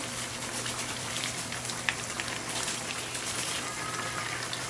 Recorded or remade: remade